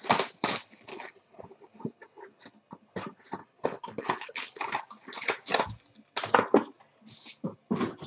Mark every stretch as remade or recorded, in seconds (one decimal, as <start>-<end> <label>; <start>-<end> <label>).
0.0-0.9 recorded; 0.9-1.4 remade; 1.4-3.4 recorded; 3.4-4.6 remade; 4.6-8.1 recorded